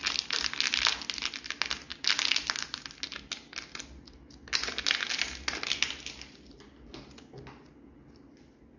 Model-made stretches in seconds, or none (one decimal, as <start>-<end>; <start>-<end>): none

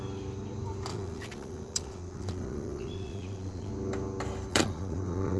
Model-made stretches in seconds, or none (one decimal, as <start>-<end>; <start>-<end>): 0.9-3.7; 4.5-5.4

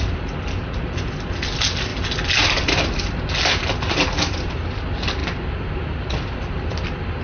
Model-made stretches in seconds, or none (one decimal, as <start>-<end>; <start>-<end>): none

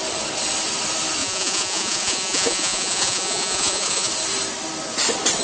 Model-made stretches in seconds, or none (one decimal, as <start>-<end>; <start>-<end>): 1.2-4.1